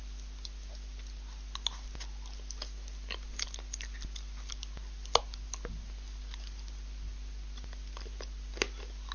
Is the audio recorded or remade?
recorded